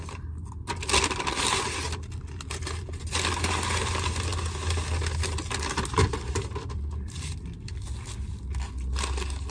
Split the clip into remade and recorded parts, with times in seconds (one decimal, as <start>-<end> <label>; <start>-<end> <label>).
0.0-9.5 recorded